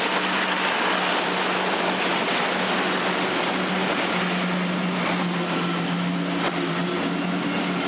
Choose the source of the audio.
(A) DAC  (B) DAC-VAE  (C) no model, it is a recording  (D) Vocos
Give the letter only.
C